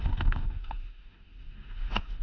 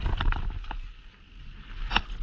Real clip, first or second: second